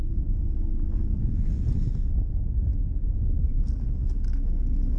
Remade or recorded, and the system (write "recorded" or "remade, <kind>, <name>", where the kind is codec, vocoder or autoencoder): recorded